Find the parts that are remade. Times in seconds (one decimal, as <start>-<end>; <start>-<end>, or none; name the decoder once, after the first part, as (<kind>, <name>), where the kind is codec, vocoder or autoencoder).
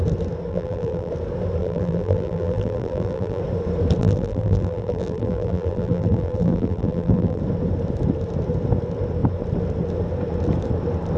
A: 0.5-1.1 (vocoder, BigVGAN v2); 1.6-3.4; 4.0-7.4